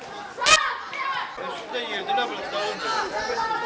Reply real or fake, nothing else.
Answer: real